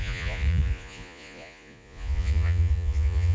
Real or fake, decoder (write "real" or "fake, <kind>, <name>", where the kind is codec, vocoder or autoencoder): fake, vocoder, Vocos